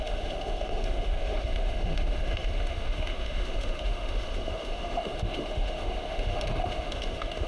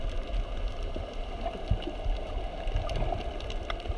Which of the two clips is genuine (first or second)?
second